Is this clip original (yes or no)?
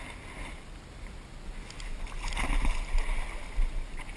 yes